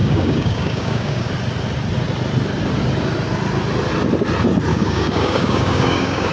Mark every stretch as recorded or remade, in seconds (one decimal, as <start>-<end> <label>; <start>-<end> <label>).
0.0-1.3 remade; 1.3-4.7 recorded; 4.7-6.3 remade